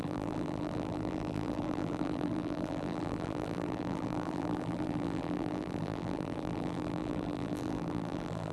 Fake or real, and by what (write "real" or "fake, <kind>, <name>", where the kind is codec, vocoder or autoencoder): fake, vocoder, BigVGAN v2